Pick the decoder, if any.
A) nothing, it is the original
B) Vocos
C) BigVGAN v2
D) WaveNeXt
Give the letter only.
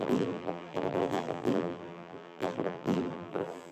C